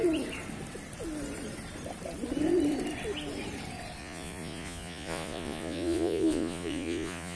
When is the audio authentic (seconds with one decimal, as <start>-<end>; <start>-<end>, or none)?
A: 0.0-4.0